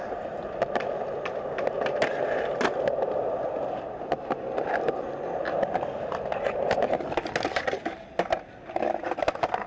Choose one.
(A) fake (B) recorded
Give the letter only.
B